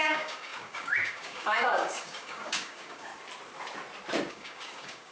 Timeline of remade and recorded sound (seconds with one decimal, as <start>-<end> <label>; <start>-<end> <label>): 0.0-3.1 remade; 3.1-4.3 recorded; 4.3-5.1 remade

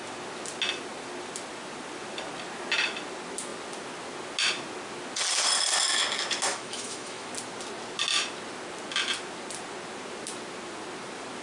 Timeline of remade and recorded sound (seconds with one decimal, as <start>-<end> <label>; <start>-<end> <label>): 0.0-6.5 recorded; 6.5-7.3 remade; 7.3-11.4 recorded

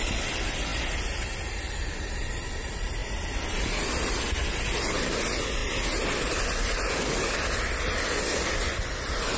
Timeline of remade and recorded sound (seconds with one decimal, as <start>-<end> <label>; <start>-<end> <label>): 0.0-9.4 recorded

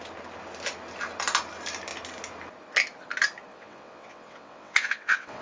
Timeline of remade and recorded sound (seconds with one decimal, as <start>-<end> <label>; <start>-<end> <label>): 0.0-3.5 recorded; 3.5-5.4 remade

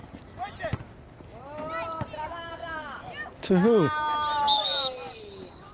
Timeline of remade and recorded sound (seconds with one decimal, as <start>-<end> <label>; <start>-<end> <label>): 0.0-5.7 recorded

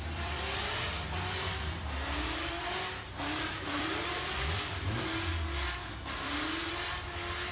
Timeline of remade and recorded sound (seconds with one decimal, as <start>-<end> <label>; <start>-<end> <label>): 0.0-0.6 remade; 0.6-2.4 recorded; 2.4-5.3 remade; 5.3-7.5 recorded

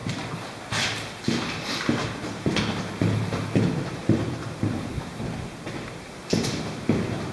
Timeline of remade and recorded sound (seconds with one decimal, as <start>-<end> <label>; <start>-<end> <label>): 0.0-2.0 recorded; 2.0-5.2 remade; 5.2-6.2 recorded; 6.2-7.3 remade